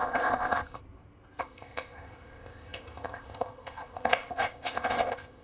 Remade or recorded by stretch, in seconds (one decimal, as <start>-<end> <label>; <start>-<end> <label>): 0.0-0.8 remade; 0.8-1.4 recorded; 1.4-5.4 remade